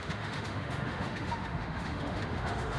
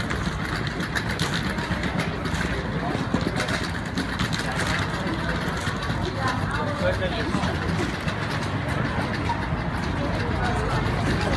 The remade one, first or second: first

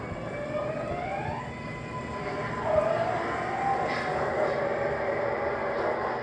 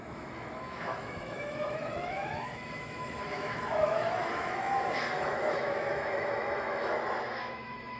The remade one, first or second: second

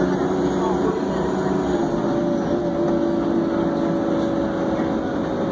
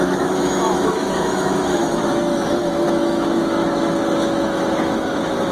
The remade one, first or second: second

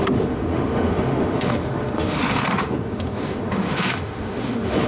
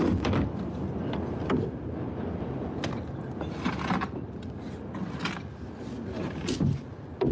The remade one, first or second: first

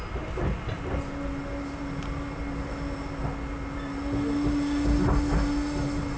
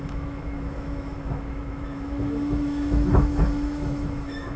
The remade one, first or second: second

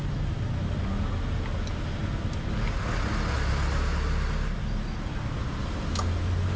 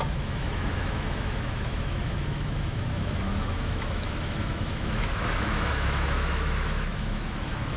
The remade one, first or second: second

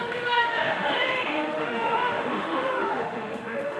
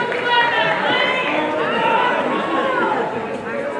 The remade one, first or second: first